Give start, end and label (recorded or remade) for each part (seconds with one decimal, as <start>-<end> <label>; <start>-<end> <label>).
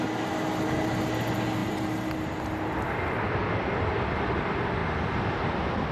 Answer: 0.0-5.9 recorded